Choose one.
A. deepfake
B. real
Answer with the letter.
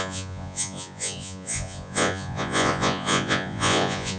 A